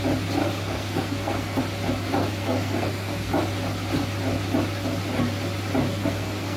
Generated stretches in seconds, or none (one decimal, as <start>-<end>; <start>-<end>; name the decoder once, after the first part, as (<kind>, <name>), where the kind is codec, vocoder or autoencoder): 0.4-1.6 (codec, SNAC); 2.2-3.3; 5.9-6.6